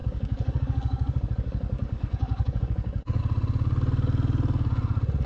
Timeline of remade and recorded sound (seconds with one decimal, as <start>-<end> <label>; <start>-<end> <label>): 0.0-3.2 remade; 3.2-5.3 recorded